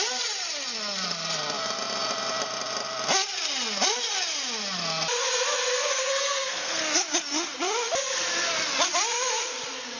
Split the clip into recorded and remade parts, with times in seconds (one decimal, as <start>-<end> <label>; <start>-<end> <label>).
0.0-5.7 recorded; 5.7-6.8 remade; 6.8-10.0 recorded